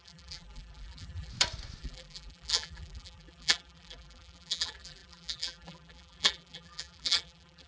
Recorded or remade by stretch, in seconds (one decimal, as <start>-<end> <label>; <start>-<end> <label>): 0.0-1.3 remade; 1.3-1.8 recorded; 1.8-7.7 remade